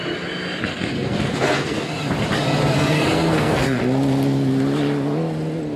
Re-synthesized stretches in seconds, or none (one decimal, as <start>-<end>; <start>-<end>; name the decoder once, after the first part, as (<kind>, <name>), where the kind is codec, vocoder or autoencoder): 0.7-1.9 (codec, SNAC); 2.6-3.8